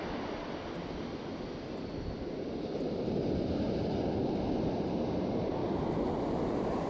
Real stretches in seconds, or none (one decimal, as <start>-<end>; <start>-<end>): 0.0-6.9